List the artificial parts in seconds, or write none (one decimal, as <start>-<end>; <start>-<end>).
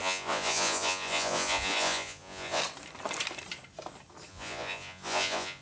0.0-2.6; 4.3-5.6